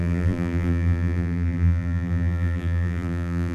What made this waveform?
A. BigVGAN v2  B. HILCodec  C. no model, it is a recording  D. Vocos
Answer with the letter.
A